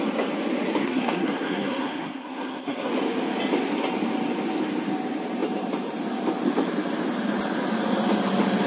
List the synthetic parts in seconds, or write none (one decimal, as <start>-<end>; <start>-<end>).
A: 0.8-2.9